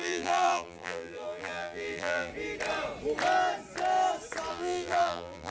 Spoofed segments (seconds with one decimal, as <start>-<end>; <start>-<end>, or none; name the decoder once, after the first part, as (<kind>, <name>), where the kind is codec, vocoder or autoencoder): 0.0-2.3 (vocoder, BigVGAN v2); 4.5-5.5